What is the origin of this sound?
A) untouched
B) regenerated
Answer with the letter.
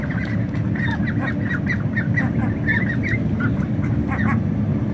A